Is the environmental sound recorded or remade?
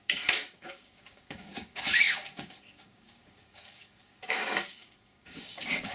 remade